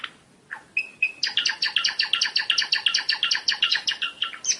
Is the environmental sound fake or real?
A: real